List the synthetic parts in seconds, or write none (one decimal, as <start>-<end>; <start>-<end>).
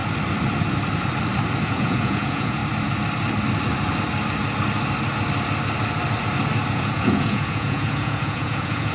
1.6-2.6; 6.7-8.9